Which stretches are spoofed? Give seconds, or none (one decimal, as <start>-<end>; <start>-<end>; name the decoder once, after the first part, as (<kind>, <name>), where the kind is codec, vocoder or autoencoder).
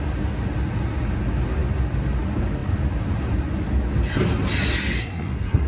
5.0-5.7 (codec, SNAC)